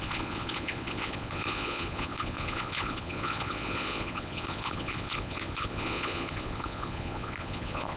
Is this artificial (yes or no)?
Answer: yes